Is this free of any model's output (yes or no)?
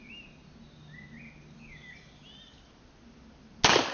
yes